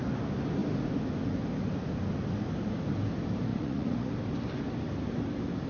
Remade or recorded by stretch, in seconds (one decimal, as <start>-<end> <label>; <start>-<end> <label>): 0.0-3.5 recorded; 3.5-4.1 remade; 4.1-5.7 recorded